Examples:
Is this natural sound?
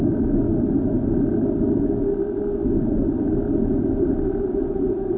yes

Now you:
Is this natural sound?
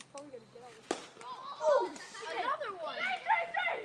yes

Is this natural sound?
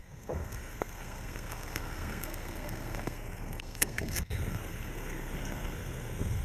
no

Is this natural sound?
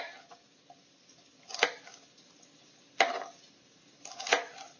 yes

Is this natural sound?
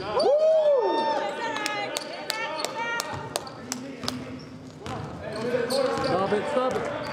yes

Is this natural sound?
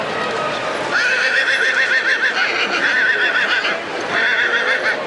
yes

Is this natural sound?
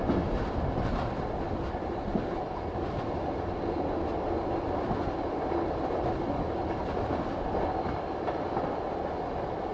yes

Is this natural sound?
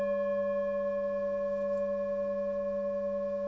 yes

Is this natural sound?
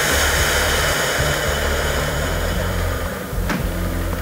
no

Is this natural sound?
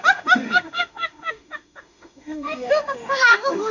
no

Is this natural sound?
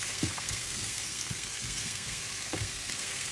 no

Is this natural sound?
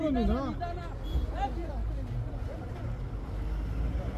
yes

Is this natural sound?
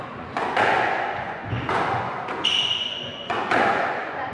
no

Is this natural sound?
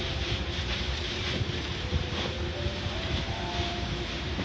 no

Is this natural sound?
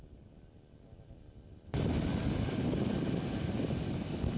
yes